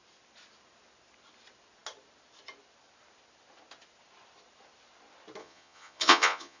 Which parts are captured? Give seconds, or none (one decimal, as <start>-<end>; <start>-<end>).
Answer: 0.0-5.4